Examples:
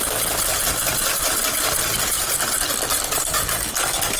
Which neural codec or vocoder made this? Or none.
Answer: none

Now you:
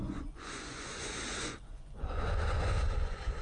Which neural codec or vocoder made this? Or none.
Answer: vocoder, Vocos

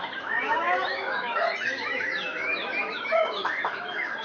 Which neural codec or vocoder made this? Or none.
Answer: autoencoder, DAC-VAE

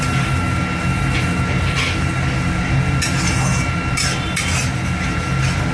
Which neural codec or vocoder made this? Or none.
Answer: none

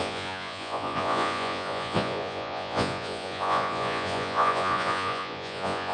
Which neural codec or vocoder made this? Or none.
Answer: vocoder, Vocos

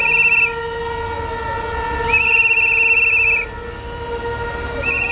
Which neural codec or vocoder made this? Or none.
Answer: none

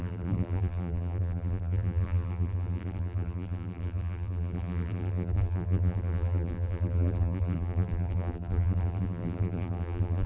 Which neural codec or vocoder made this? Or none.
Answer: vocoder, BigVGAN v2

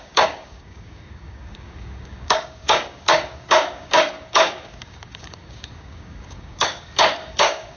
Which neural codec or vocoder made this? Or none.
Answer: codec, DAC